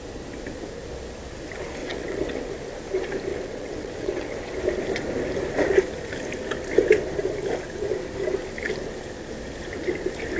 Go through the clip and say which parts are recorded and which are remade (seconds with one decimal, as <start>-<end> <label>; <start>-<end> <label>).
0.0-1.8 recorded; 1.8-2.5 remade; 2.5-3.3 recorded; 3.3-4.5 remade; 4.5-10.4 recorded